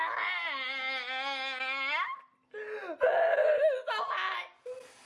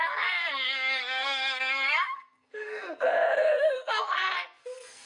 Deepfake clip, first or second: second